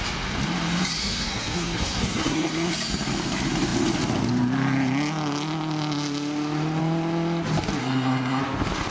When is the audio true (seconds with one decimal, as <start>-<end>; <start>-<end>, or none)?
0.0-1.0; 2.7-7.8; 8.4-8.9